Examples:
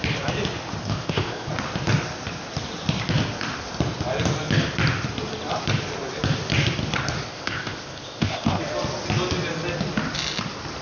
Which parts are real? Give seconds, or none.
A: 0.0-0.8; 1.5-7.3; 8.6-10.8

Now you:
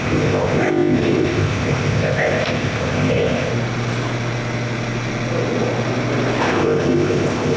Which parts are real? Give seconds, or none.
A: 3.5-6.4

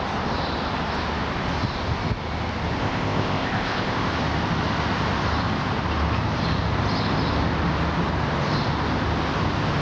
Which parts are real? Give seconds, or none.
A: 0.0-2.8; 4.1-9.8

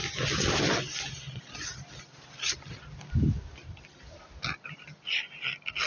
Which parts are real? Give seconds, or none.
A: 0.0-5.9

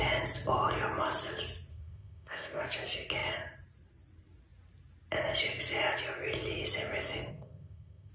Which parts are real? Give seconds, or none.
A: 0.0-1.7; 2.6-7.3

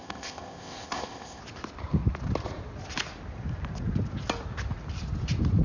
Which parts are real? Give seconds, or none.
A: 1.4-5.6

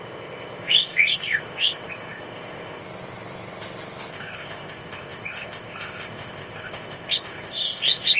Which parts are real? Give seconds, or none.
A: 2.8-4.1